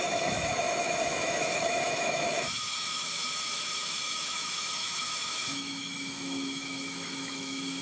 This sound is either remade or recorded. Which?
remade